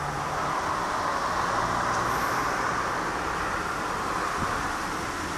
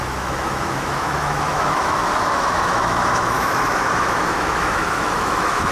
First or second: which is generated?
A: second